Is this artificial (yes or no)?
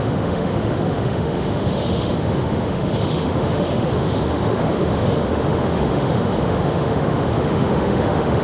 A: yes